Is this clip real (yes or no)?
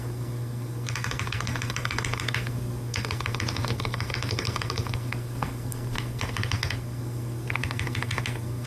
no